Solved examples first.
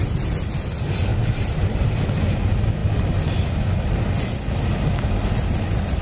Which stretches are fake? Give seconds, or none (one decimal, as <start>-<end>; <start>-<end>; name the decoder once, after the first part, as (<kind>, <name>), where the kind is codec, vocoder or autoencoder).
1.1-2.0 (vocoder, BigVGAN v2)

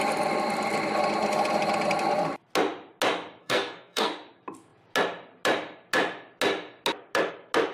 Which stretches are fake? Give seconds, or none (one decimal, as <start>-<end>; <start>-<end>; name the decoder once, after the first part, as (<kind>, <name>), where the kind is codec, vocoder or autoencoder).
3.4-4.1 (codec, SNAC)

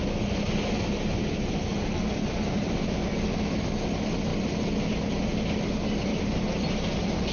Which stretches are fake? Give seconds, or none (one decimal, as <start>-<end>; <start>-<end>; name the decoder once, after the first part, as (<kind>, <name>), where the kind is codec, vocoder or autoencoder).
none

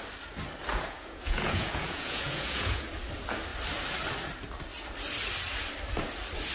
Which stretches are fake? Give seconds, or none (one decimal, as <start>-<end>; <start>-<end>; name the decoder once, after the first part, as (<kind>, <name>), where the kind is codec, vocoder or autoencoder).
0.7-2.9 (vocoder, Vocos)

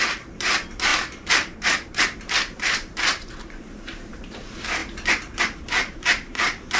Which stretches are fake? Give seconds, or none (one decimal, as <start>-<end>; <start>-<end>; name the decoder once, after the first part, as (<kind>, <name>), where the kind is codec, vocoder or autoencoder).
0.0-6.8 (vocoder, BigVGAN v2)

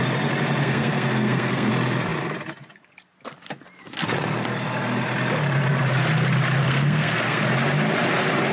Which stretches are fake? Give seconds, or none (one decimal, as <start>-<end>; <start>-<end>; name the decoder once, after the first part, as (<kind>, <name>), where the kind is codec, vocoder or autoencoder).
0.6-1.7 (codec, SNAC); 6.6-7.4

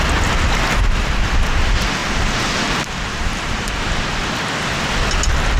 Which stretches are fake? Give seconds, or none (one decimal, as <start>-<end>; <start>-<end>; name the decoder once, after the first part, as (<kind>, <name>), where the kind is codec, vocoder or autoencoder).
2.0-3.7 (vocoder, BigVGAN v2)

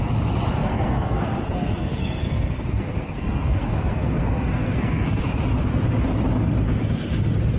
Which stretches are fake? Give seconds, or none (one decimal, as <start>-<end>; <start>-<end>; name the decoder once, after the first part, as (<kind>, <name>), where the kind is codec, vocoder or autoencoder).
0.6-5.2 (codec, SNAC)